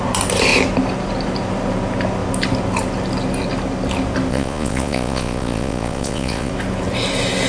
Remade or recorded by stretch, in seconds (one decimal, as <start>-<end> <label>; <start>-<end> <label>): 0.0-4.3 recorded; 4.3-6.5 remade; 6.5-7.5 recorded